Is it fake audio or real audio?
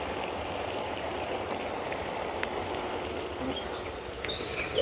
fake